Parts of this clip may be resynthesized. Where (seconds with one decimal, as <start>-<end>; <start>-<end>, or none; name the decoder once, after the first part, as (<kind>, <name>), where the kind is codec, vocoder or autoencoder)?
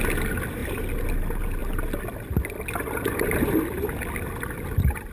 none